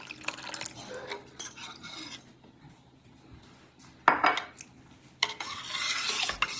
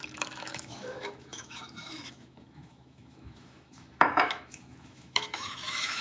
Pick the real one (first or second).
first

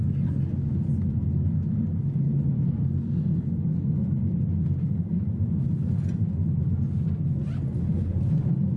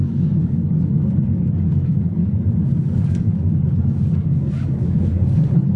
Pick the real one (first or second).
first